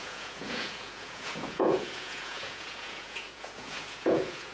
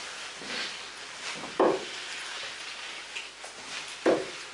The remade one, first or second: first